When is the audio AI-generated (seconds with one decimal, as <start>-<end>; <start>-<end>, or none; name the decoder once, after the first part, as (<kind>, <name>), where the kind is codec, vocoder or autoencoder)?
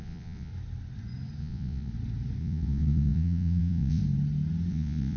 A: 0.0-0.5 (vocoder, Vocos); 1.4-1.9; 2.4-4.0; 4.7-5.2